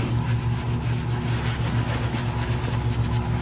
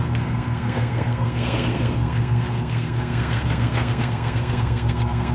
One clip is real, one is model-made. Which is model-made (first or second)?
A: second